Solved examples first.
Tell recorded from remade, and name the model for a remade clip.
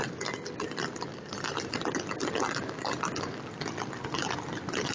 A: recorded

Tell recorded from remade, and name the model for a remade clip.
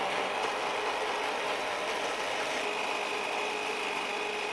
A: recorded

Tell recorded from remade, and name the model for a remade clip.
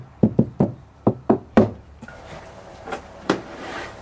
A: remade, vocoder, BigVGAN v2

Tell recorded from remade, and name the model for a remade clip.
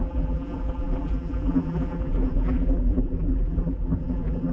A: remade, vocoder, BigVGAN v2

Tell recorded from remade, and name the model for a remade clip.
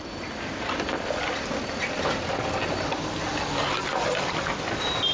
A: recorded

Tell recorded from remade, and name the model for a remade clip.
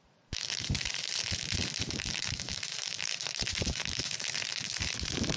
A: remade, vocoder, BigVGAN v2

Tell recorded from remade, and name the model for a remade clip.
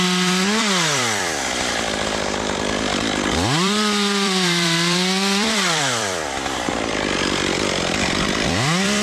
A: remade, vocoder, BigVGAN v2